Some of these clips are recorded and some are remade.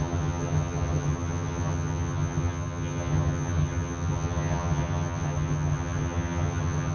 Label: remade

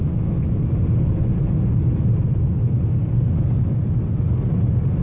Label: recorded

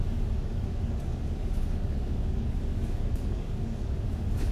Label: remade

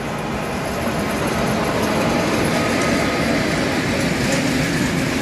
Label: recorded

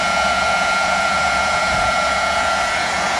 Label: remade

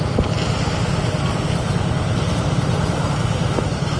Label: recorded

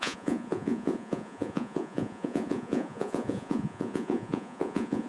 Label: remade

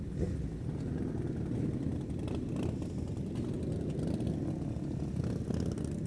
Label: recorded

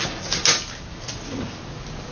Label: recorded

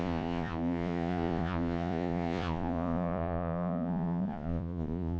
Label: remade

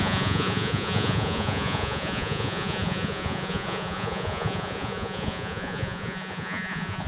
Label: remade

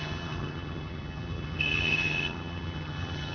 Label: remade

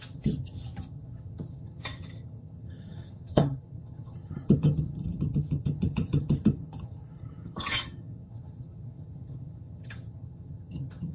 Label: remade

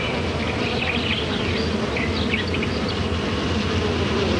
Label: recorded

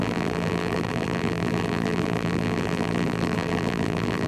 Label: remade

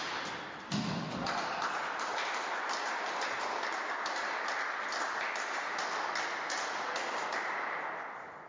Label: recorded